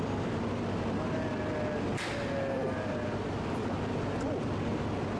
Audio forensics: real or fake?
real